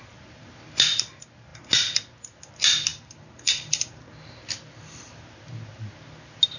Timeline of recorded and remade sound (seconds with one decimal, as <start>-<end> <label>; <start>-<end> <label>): 0.0-2.9 recorded; 2.9-3.9 remade; 3.9-6.6 recorded